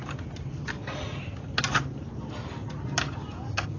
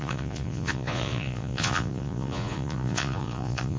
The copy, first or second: second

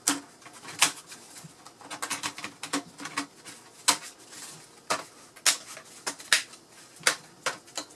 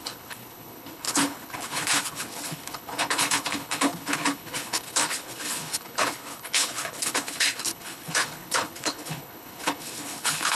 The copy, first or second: second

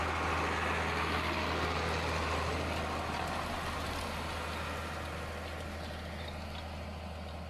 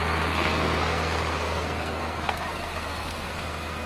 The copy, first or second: second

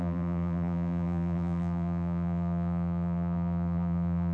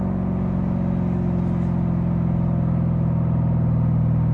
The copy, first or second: first